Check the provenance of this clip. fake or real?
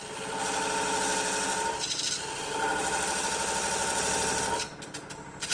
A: real